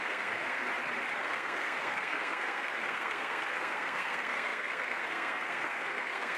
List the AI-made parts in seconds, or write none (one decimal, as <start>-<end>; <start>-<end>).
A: 0.0-0.7; 1.2-6.4